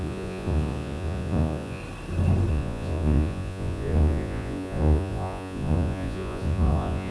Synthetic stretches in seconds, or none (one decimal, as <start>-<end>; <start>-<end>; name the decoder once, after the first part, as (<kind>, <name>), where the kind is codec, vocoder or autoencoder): 0.0-1.8 (vocoder, Vocos); 2.5-7.1